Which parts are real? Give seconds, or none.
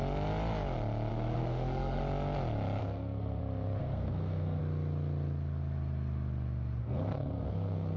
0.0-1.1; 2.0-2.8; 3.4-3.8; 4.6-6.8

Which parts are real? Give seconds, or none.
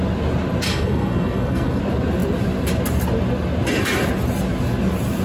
0.0-0.7; 1.8-5.2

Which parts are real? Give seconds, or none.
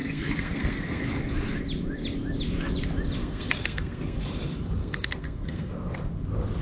1.0-3.2; 4.2-4.8; 5.7-6.6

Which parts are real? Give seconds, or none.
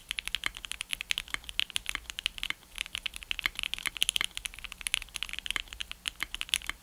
0.0-6.8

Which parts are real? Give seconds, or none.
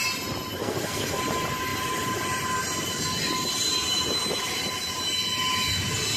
0.0-0.6; 1.2-6.2